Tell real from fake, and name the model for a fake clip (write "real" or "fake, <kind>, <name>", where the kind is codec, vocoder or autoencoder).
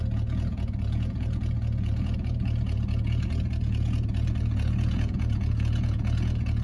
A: fake, vocoder, Vocos